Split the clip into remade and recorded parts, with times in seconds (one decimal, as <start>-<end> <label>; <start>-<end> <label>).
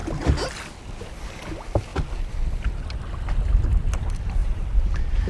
0.0-4.4 recorded; 4.4-5.3 remade